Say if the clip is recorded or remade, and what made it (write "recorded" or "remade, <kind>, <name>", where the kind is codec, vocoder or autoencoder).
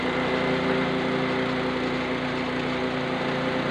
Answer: recorded